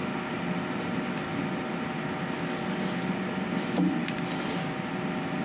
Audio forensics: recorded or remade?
recorded